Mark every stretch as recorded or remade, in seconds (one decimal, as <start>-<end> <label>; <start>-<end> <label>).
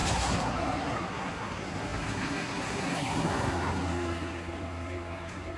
0.0-5.6 remade